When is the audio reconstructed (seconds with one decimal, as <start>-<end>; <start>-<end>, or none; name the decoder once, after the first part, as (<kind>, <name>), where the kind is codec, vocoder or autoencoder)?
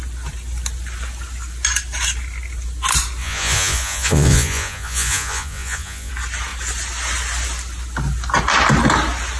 3.2-6.1 (vocoder, Vocos)